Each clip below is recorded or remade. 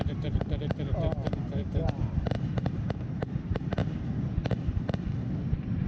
remade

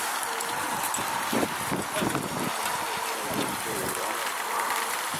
remade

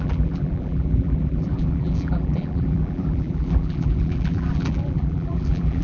remade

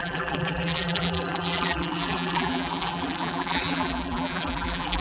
remade